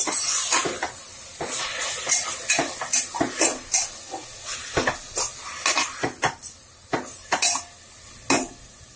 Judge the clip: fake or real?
real